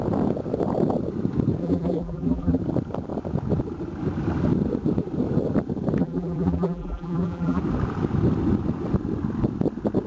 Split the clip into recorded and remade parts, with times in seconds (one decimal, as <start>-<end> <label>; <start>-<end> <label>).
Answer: 0.0-1.6 recorded; 1.6-2.6 remade; 2.6-6.0 recorded; 6.0-7.6 remade; 7.6-10.1 recorded

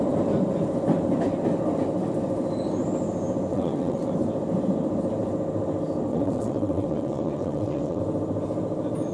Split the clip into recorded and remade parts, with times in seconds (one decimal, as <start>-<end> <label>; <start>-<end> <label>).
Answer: 0.0-3.5 recorded; 3.5-4.1 remade; 4.1-6.1 recorded; 6.1-8.0 remade; 8.0-9.1 recorded

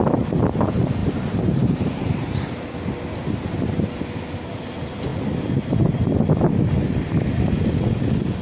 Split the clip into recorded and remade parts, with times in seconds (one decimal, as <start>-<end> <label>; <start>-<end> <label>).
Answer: 0.0-1.0 recorded; 1.0-2.1 remade; 2.1-8.4 recorded